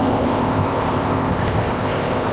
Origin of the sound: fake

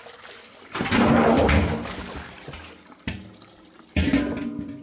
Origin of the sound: real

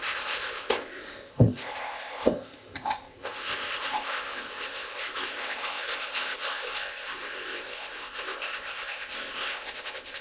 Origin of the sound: fake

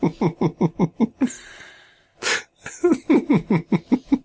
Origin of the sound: real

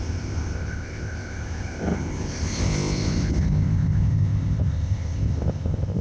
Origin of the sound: fake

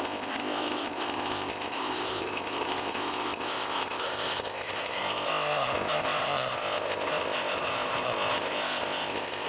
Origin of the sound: fake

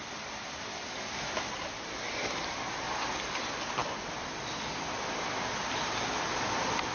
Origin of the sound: real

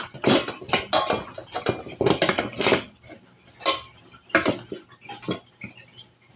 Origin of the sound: real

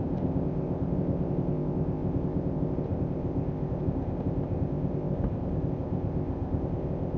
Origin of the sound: fake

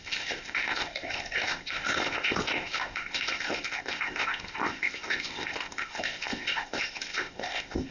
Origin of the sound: fake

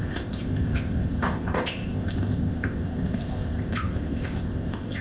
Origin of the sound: fake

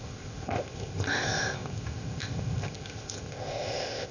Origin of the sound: fake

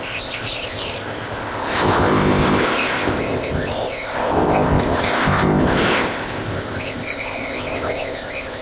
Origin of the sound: fake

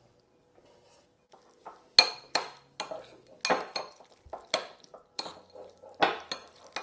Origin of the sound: real